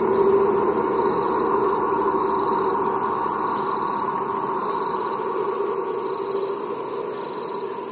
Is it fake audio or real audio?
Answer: real